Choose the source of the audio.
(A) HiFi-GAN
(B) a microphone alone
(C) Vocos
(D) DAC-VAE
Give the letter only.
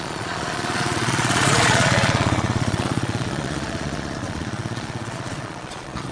C